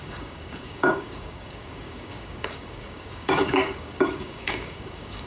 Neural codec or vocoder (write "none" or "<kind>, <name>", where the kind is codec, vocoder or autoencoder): codec, DAC